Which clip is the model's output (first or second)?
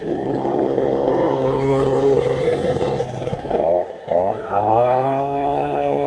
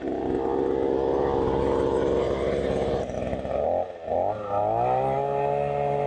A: first